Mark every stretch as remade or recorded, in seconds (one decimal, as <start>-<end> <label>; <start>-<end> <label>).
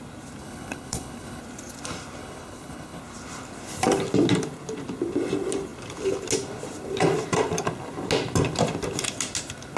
0.0-0.4 recorded; 0.4-1.4 remade; 1.4-2.2 recorded; 2.2-3.0 remade; 3.0-9.8 recorded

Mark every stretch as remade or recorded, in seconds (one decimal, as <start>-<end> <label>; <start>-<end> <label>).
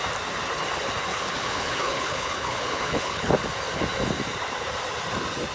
0.0-1.1 recorded; 1.1-3.3 remade; 3.3-5.5 recorded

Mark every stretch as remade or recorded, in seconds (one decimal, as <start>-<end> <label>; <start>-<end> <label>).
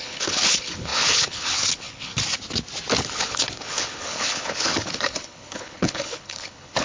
0.0-2.1 remade; 2.1-3.0 recorded; 3.0-6.8 remade